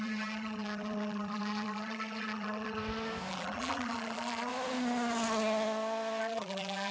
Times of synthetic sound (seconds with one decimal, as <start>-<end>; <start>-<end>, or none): 0.0-2.8; 3.3-4.5; 6.2-6.9